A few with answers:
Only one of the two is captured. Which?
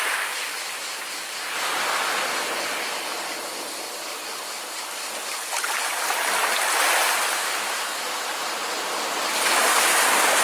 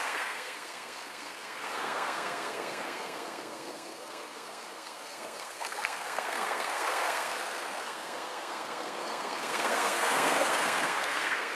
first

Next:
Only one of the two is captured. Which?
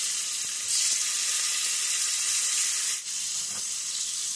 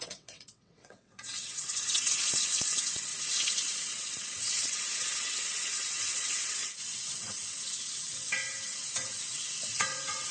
first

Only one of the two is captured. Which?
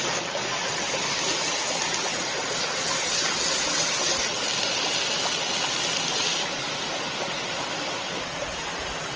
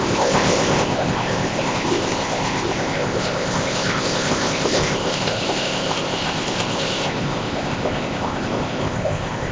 first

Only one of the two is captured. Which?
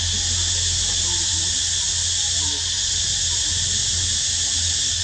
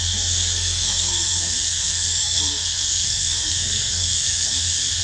first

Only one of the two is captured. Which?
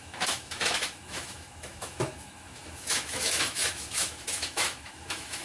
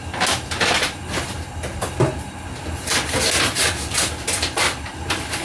second